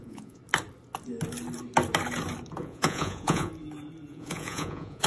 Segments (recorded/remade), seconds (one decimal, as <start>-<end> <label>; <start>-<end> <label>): 0.0-0.4 remade; 0.4-2.6 recorded; 2.6-3.5 remade; 3.5-4.1 recorded; 4.1-5.1 remade